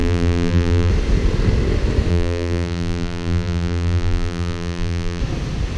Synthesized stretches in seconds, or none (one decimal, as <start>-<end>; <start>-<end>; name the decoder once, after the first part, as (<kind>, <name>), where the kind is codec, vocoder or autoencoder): 0.0-0.9 (vocoder, BigVGAN v2); 2.1-5.2